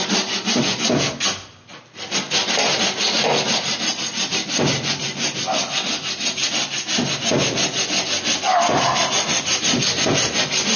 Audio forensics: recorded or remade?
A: recorded